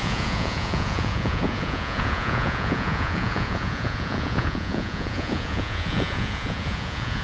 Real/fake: fake